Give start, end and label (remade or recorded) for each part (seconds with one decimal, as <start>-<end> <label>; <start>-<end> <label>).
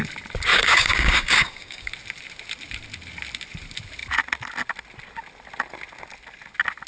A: 0.0-0.5 recorded; 0.5-1.9 remade; 1.9-6.9 recorded